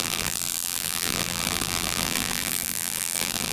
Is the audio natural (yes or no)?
no